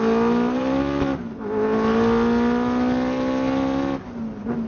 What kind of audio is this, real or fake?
real